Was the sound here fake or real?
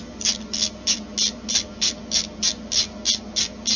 real